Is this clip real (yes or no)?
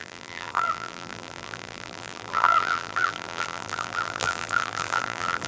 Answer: no